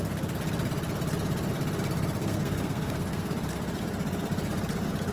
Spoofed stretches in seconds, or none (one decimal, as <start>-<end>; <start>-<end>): 2.2-3.3

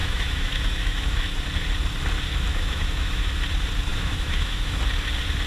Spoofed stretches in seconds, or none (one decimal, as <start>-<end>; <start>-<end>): 0.0-1.2; 2.5-3.3; 3.9-4.8